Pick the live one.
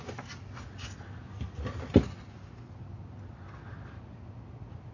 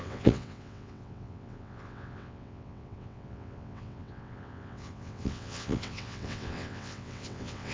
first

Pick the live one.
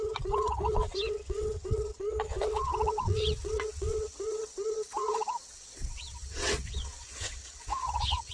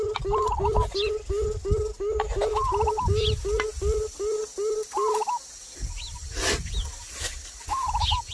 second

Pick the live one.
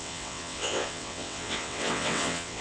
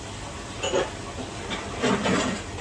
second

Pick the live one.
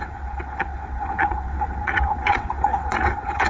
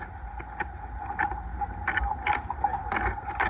second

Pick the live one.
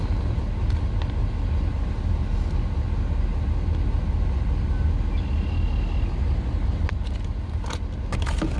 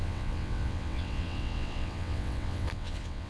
first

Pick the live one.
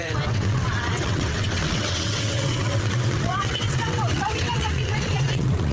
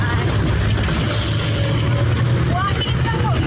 second